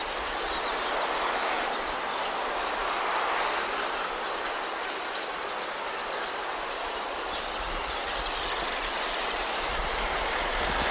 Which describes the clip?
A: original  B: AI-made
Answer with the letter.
A